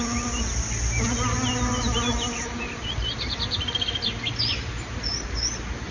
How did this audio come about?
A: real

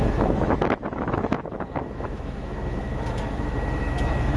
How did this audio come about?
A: fake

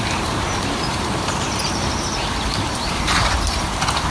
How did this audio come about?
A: fake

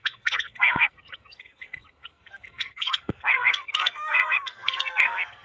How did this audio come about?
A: fake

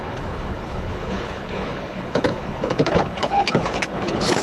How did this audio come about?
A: fake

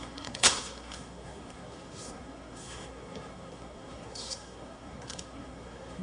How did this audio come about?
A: fake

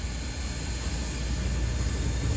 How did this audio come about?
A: real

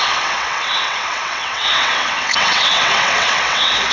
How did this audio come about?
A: fake